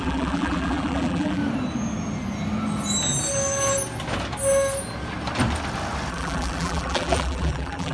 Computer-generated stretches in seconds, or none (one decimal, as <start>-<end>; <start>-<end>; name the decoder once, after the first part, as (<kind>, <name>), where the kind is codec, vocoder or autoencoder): 0.0-1.4 (vocoder, BigVGAN v2); 6.1-7.9

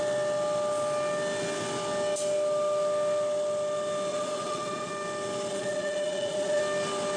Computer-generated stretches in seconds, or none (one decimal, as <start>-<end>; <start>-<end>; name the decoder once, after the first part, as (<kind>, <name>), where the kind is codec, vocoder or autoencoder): 4.1-4.9 (vocoder, Vocos); 5.5-6.6

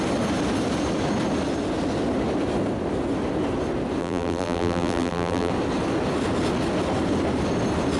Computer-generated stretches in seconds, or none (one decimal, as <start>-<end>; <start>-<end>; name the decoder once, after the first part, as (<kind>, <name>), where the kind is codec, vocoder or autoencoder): 4.0-5.5 (vocoder, BigVGAN v2)